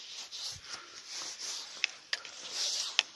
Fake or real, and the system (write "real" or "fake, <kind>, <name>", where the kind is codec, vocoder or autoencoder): real